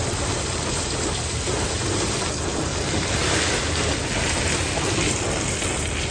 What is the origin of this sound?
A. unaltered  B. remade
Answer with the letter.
A